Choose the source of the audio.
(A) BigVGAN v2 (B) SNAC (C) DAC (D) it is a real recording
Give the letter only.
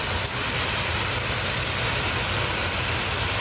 D